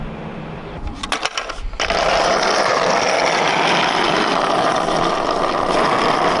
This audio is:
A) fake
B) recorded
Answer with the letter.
B